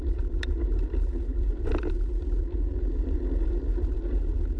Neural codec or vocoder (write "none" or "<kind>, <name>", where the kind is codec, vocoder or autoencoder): none